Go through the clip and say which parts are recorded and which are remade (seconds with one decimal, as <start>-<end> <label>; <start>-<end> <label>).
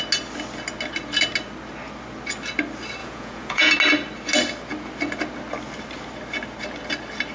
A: 0.0-3.0 recorded; 3.0-3.7 remade; 3.7-7.3 recorded